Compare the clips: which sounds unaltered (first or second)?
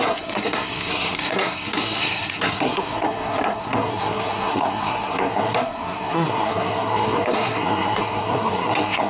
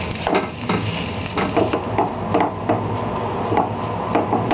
second